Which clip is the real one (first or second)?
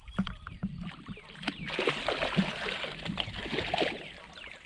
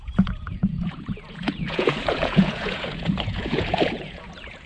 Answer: first